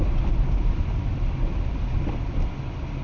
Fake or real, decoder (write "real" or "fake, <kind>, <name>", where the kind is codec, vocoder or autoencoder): real